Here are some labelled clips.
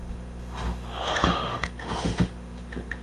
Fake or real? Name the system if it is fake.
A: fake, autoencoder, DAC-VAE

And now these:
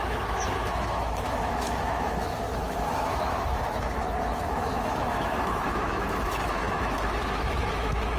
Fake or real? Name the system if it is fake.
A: fake, autoencoder, DAC-VAE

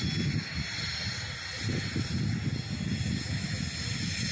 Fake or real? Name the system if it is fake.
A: real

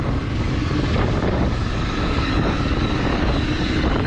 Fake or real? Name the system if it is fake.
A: fake, codec, DAC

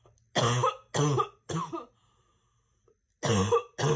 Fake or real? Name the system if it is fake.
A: real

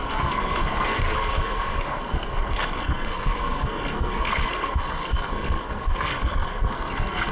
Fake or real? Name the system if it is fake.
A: fake, codec, SNAC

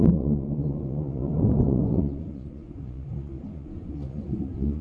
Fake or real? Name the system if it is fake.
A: fake, vocoder, Vocos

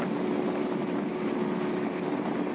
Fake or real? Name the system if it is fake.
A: real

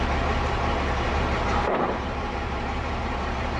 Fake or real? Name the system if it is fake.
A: fake, vocoder, BigVGAN v2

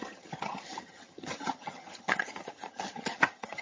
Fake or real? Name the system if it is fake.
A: fake, vocoder, HiFi-GAN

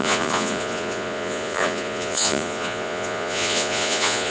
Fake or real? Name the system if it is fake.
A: fake, vocoder, Vocos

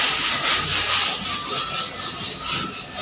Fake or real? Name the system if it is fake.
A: real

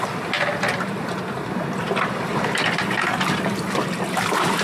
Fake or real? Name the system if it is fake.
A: real